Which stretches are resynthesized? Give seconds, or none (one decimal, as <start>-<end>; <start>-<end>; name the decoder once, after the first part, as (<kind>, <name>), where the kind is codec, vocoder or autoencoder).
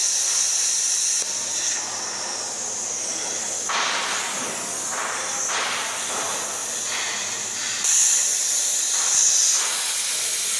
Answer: 0.0-0.7 (vocoder, BigVGAN v2)